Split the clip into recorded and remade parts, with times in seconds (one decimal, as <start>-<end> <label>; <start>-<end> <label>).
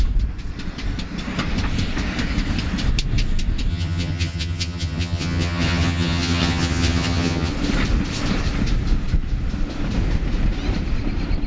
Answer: 0.0-3.7 recorded; 3.7-7.5 remade; 7.5-11.5 recorded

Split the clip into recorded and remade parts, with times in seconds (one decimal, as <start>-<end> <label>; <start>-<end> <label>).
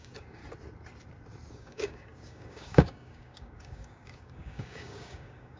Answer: 0.0-0.4 remade; 0.4-1.5 recorded; 1.5-5.6 remade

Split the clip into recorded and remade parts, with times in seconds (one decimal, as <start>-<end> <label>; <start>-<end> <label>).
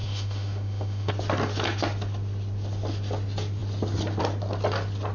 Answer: 0.0-1.1 remade; 1.1-5.1 recorded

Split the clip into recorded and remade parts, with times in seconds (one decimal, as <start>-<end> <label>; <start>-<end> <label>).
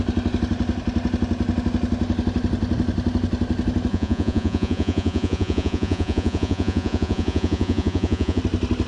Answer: 0.0-3.9 recorded; 3.9-8.4 remade; 8.4-8.9 recorded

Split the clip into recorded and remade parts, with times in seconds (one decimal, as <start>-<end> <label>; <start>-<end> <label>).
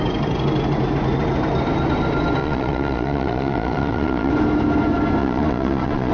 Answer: 0.0-2.4 recorded; 2.4-4.3 remade; 4.3-5.2 recorded; 5.2-6.1 remade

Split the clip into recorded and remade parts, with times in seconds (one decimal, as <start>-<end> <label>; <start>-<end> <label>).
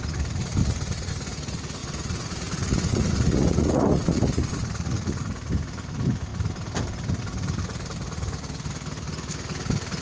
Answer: 0.0-0.6 recorded; 0.6-1.1 remade; 1.1-1.8 recorded; 1.8-5.2 remade; 5.2-10.0 recorded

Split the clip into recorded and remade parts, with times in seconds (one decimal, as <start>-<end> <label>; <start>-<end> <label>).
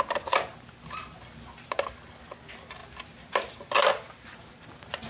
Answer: 0.0-5.1 recorded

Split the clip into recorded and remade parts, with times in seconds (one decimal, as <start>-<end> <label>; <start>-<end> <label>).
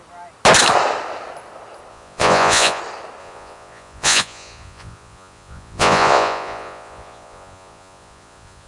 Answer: 0.0-1.9 recorded; 1.9-2.8 remade; 2.8-3.2 recorded; 3.2-8.7 remade